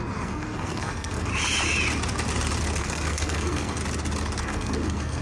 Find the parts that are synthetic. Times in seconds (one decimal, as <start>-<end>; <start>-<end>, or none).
0.0-1.3; 2.8-3.8; 4.4-5.2